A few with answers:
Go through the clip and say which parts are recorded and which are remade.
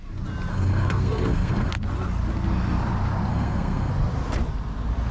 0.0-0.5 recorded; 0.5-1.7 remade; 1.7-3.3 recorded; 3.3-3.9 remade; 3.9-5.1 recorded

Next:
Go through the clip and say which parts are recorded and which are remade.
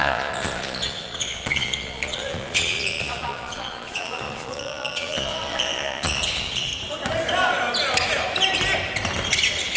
0.0-6.7 remade; 6.7-9.8 recorded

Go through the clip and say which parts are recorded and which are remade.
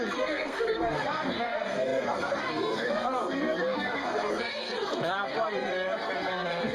0.0-6.7 remade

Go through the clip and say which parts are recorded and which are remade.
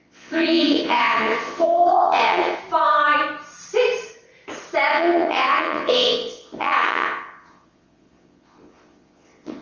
0.0-2.6 remade; 2.6-4.9 recorded; 4.9-9.6 remade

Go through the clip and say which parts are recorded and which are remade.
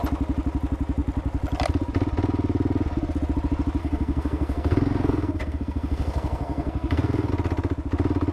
0.0-3.8 recorded; 3.8-7.3 remade; 7.3-8.3 recorded